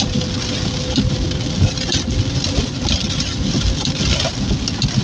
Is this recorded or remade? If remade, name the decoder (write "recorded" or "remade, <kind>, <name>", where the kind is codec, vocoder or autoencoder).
recorded